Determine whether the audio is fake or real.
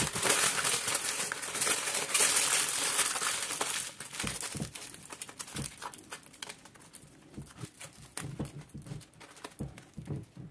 real